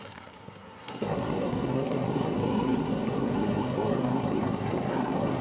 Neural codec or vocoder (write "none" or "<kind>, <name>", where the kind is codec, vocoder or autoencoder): codec, SNAC